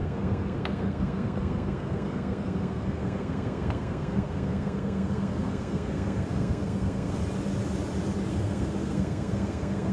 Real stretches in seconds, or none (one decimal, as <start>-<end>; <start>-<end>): 7.2-8.3